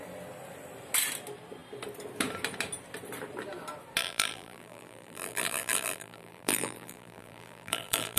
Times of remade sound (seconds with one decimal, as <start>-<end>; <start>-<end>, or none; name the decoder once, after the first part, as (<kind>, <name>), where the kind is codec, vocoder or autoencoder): 4.0-8.2 (vocoder, BigVGAN v2)

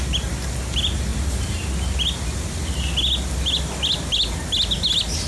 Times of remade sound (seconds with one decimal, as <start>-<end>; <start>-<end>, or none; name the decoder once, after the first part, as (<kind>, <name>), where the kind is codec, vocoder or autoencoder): 1.1-1.7 (vocoder, BigVGAN v2)

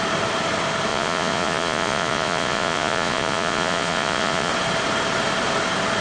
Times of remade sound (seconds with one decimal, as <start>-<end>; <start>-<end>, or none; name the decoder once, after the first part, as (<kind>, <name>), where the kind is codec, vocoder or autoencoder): 0.9-4.5 (vocoder, Vocos)